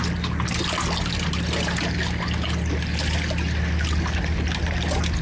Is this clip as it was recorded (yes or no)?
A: yes